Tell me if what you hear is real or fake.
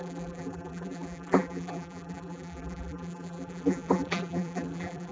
fake